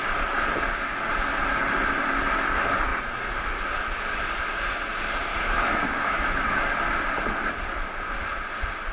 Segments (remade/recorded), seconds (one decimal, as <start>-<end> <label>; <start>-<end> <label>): 0.0-5.3 recorded; 5.3-6.6 remade; 6.6-8.9 recorded